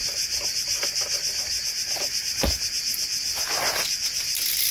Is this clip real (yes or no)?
yes